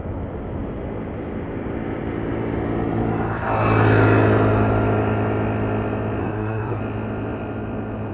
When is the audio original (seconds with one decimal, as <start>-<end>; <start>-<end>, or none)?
0.0-6.2; 6.8-8.1